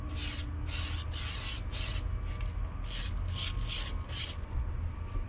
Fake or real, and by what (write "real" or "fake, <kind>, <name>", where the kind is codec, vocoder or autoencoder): real